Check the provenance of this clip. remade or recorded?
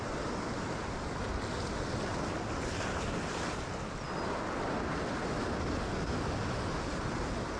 recorded